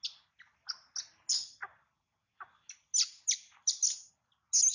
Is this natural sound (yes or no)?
yes